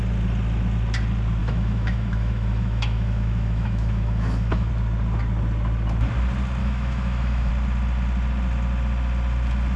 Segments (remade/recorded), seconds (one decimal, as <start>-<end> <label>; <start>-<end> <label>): 0.0-1.4 recorded; 1.4-4.7 remade; 4.7-6.6 recorded; 6.6-7.5 remade; 7.5-9.8 recorded